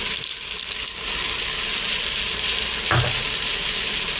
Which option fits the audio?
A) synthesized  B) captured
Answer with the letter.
B